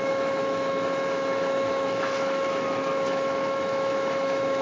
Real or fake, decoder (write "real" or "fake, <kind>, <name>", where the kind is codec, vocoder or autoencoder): fake, autoencoder, DAC-VAE